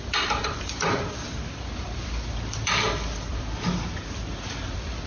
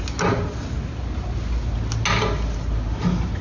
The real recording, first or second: second